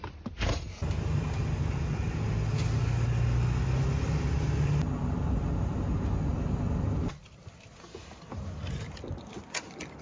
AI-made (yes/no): no